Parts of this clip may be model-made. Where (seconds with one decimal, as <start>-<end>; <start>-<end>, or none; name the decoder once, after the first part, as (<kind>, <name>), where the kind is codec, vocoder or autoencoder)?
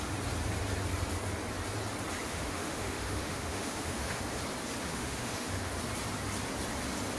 2.3-4.2 (autoencoder, DAC-VAE); 4.8-5.7